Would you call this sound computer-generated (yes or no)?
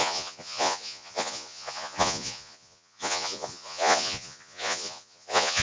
yes